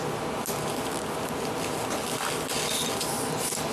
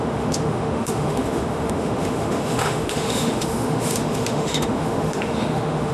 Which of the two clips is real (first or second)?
first